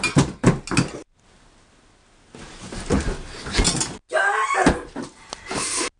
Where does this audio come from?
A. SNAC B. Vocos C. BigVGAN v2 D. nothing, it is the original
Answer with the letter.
D